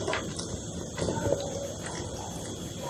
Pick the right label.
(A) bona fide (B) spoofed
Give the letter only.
A